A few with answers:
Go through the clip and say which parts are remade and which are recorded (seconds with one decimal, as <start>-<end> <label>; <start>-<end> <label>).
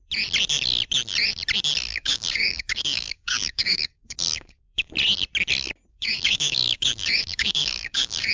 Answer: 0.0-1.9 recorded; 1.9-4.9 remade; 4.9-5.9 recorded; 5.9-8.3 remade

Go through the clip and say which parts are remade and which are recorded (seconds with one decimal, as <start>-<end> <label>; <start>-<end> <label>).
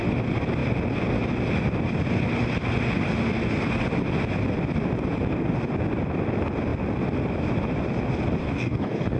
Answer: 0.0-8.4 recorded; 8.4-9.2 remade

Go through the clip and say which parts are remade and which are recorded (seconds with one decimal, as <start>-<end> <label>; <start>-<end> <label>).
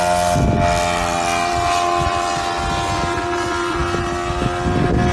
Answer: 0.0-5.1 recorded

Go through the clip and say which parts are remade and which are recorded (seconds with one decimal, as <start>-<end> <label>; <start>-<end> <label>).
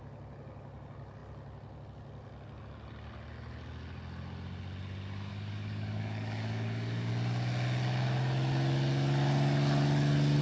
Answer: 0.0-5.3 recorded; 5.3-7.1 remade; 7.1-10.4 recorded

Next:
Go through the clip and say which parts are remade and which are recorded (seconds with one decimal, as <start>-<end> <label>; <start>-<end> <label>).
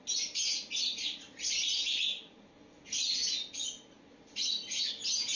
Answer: 0.0-5.4 recorded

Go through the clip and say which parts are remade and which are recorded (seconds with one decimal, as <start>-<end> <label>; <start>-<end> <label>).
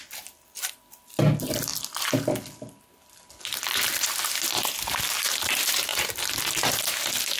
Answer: 0.0-7.4 recorded